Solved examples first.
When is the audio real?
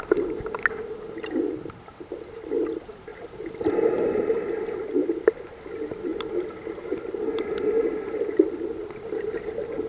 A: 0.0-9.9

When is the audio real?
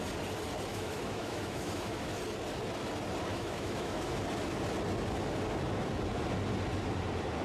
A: 0.0-0.7; 2.2-3.3; 4.2-7.4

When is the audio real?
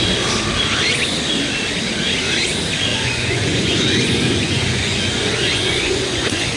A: 0.0-2.9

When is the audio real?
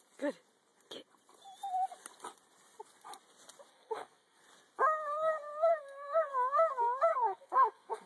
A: 0.0-3.7; 4.4-5.7; 6.3-7.1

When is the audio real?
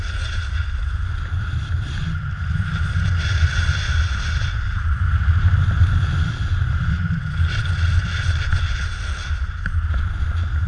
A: 0.0-8.0; 8.7-10.7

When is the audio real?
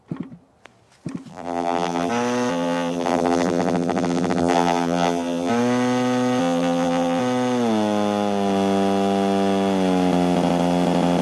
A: 0.0-1.3; 2.1-2.5; 5.5-6.4; 7.2-11.2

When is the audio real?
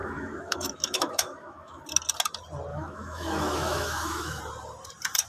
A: 1.8-2.7; 4.4-5.3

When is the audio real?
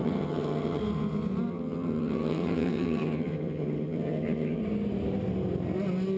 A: 0.8-1.5; 4.6-6.2